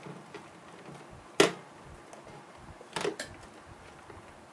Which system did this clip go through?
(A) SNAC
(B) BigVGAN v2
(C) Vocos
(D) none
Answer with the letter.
D